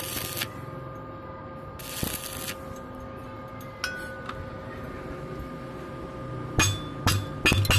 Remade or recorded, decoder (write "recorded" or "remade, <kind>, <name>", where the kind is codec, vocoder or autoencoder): recorded